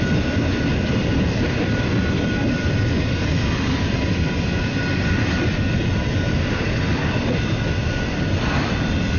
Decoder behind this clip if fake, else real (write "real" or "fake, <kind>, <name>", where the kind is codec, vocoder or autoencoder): real